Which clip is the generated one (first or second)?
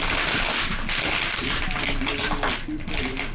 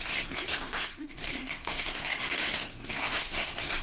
second